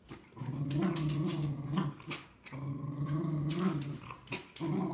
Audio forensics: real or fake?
real